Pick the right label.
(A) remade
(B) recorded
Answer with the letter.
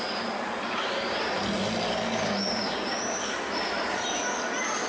B